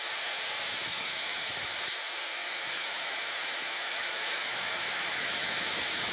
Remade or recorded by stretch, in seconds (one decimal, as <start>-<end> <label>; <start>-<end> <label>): 0.0-0.9 recorded; 0.9-1.8 remade; 1.8-2.4 recorded; 2.4-6.1 remade